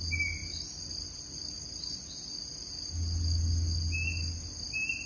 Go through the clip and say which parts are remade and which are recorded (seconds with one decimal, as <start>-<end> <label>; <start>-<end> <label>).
0.0-5.1 recorded